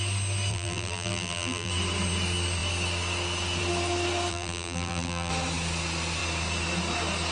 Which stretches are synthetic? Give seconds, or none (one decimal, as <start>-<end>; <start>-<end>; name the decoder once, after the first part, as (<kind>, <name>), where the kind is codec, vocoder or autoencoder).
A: 0.5-1.7 (vocoder, BigVGAN v2); 4.3-5.3